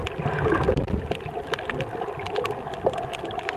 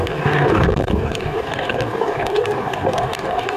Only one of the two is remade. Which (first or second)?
second